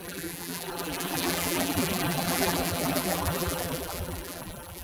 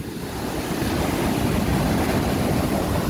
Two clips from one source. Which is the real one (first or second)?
second